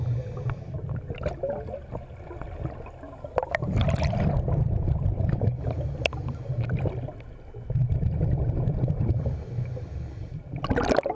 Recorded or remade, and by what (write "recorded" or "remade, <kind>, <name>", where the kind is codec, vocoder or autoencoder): recorded